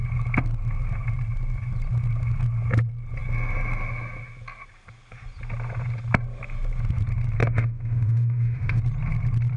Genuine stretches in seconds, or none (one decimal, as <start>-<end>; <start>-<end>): 0.0-7.4; 8.8-9.6